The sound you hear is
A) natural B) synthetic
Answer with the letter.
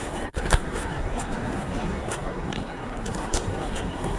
B